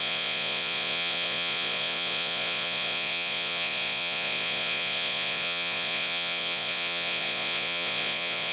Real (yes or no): no